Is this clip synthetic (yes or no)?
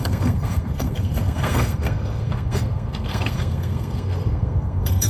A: yes